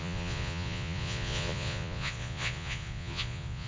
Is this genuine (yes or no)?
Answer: no